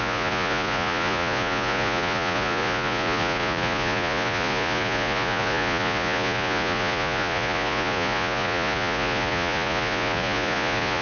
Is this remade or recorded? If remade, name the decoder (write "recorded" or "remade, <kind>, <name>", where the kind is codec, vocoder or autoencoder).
remade, vocoder, Vocos